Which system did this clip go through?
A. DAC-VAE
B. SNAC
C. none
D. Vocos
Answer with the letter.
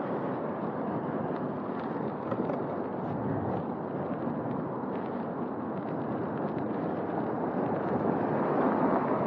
C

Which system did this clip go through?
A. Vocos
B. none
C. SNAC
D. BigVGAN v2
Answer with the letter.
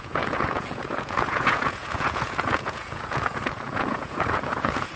A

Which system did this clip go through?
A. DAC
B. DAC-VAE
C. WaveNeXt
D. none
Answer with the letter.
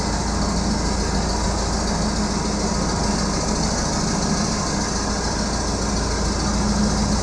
D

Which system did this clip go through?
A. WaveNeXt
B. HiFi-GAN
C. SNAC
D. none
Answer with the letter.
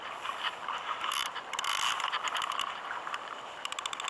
D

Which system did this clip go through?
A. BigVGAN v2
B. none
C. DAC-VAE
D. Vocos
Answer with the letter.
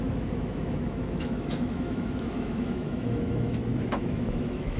C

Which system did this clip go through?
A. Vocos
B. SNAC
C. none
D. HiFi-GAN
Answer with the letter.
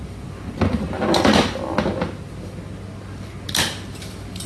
C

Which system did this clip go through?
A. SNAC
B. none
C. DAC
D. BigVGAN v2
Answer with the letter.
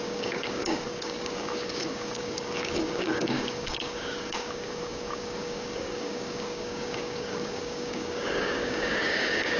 C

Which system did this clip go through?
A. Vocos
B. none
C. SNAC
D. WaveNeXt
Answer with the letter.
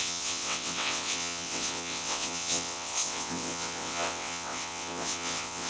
D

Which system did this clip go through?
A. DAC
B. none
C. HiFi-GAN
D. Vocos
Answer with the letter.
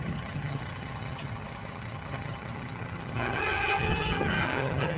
C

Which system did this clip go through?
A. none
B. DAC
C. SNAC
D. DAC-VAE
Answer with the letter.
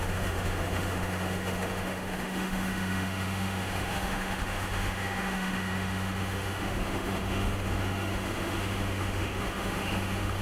D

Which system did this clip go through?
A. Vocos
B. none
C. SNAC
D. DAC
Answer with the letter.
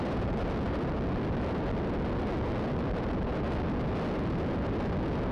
B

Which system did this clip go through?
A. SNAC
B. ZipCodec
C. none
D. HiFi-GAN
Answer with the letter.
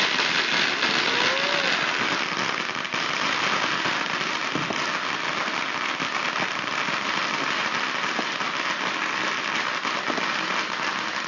C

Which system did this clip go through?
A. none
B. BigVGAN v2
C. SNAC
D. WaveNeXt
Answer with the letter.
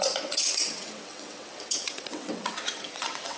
D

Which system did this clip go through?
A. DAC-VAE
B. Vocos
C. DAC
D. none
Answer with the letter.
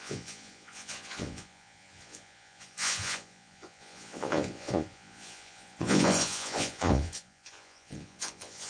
B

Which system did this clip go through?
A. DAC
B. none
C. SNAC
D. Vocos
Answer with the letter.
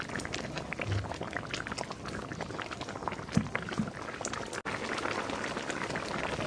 B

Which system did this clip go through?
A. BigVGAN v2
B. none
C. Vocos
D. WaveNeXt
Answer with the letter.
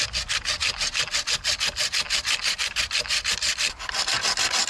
B